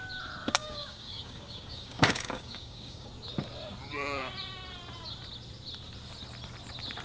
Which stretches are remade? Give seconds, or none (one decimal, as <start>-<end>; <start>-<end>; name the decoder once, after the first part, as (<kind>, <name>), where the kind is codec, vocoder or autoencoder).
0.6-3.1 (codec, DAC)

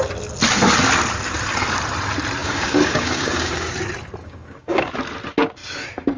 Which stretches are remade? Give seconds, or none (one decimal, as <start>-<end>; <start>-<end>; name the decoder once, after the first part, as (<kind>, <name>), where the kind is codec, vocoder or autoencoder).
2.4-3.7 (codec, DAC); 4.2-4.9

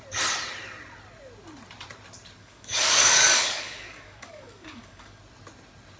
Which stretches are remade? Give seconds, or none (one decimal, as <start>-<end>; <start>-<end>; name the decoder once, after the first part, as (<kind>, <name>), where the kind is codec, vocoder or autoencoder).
2.4-5.2 (codec, DAC)

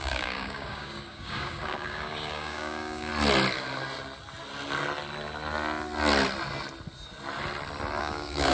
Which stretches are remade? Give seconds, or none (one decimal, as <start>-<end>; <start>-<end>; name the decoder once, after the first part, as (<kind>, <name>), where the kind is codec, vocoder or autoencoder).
0.0-3.1 (codec, DAC); 8.0-8.5

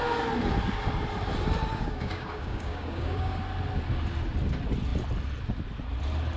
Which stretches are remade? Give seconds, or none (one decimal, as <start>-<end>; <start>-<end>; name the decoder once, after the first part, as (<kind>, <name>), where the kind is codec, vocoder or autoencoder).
1.7-3.4 (codec, DAC)

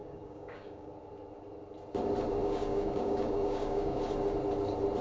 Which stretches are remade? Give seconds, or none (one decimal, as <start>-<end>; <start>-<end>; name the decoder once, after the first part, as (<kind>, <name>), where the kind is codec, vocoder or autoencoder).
0.0-0.9 (codec, DAC); 2.4-4.0

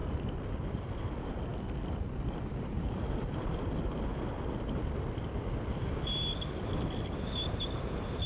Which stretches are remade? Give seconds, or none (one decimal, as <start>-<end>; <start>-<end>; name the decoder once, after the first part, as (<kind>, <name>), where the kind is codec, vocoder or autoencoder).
none

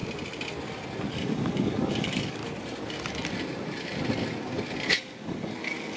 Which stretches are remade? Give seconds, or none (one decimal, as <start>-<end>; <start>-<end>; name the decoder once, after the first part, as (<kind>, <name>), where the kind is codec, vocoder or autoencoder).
1.1-2.4 (codec, DAC); 4.9-6.0